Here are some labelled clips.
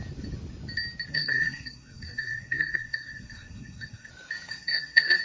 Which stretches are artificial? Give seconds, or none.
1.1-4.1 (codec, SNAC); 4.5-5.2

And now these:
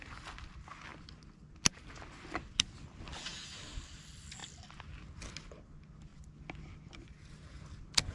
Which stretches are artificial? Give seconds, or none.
none

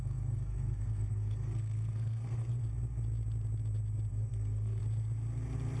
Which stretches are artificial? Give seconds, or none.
0.0-2.6 (codec, SNAC); 4.1-4.8

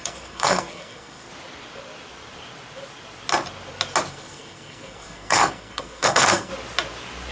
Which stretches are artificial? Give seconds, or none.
0.0-1.3 (codec, SNAC); 4.1-6.5

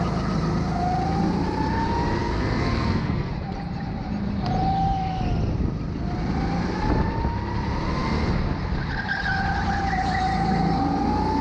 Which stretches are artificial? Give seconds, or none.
2.2-3.3 (codec, SNAC)